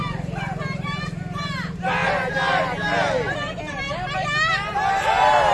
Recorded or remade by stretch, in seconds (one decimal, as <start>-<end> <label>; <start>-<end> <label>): 0.0-5.5 recorded